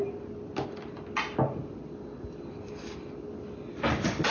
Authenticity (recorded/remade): recorded